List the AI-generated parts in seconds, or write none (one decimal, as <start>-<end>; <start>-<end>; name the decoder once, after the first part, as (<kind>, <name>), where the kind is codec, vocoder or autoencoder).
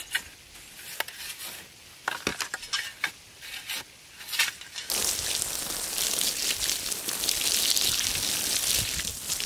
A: none